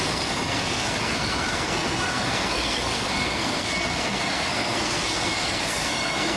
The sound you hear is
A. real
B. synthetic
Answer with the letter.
B